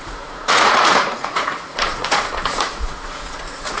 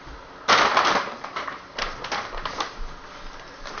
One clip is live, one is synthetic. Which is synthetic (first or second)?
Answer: first